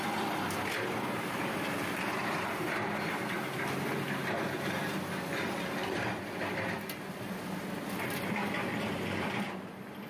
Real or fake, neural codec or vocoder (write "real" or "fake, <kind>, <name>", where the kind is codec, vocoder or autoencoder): real